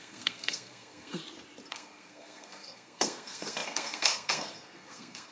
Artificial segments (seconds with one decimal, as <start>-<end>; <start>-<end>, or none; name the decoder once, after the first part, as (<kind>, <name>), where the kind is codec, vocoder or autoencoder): 0.0-1.2 (codec, SNAC); 1.7-5.3